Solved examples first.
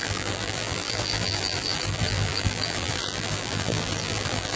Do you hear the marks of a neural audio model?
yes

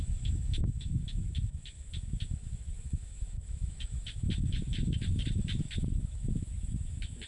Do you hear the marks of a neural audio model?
yes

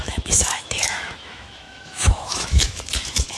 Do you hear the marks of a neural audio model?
yes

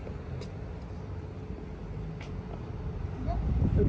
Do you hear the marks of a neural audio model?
no